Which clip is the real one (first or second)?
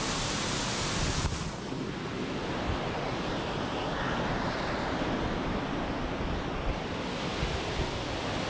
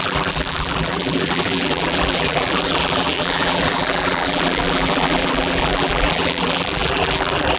first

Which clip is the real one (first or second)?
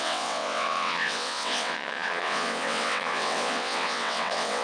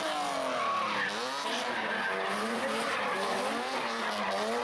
second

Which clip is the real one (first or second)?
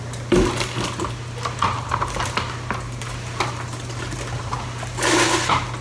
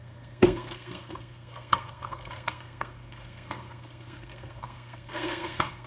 first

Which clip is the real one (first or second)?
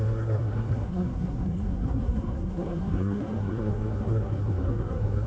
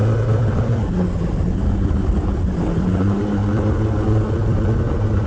second